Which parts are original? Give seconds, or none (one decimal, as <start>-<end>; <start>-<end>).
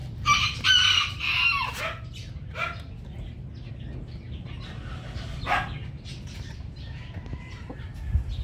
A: 0.0-8.4